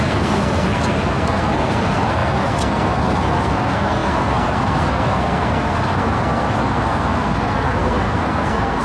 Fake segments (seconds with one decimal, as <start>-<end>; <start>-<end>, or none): 0.0-8.8